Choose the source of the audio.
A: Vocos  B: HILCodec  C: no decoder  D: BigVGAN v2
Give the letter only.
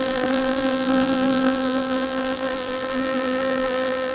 D